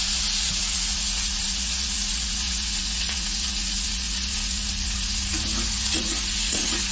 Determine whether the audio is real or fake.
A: fake